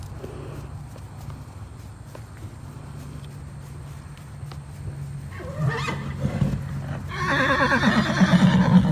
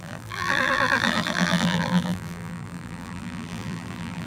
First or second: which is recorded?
first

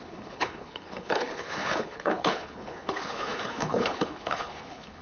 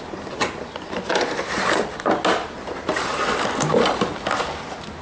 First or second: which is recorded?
second